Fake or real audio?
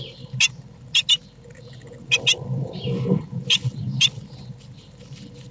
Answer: real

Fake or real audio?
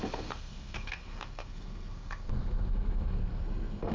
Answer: fake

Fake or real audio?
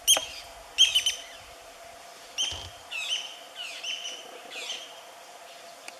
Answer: real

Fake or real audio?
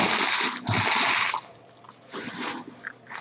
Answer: real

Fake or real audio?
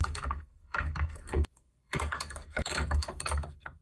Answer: fake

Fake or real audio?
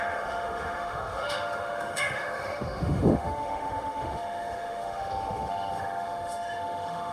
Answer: fake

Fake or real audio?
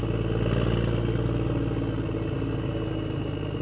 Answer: real